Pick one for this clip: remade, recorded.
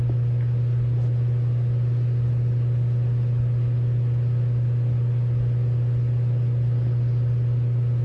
recorded